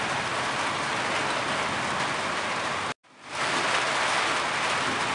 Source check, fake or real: real